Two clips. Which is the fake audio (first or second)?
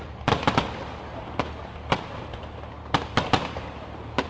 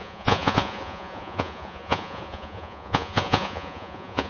second